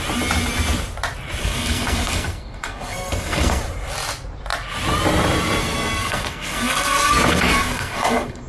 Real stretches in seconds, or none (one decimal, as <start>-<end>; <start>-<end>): 0.0-1.4; 3.6-5.6